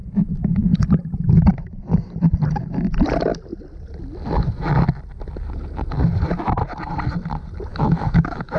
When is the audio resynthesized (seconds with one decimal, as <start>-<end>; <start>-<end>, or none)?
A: 7.7-8.6